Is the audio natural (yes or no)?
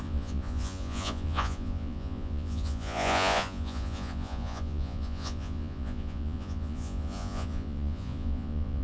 no